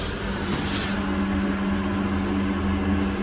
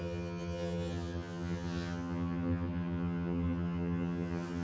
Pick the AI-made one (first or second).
second